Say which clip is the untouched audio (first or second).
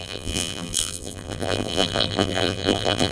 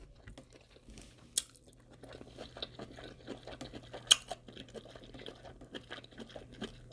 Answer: second